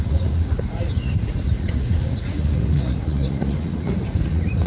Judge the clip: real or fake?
fake